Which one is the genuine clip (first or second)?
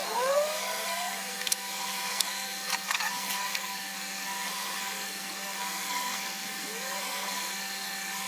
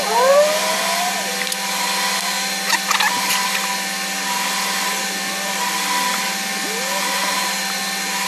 second